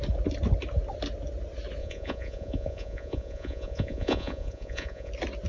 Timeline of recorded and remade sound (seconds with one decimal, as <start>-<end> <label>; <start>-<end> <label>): 0.0-1.8 recorded; 1.8-5.1 remade; 5.1-5.5 recorded